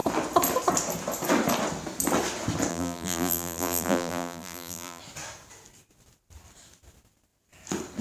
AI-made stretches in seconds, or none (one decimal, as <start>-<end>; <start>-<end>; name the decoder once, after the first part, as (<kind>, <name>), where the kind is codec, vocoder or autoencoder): 2.7-5.0 (vocoder, BigVGAN v2)